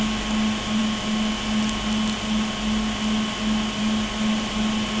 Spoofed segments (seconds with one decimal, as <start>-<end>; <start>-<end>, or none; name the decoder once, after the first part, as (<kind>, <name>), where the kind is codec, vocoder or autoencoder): none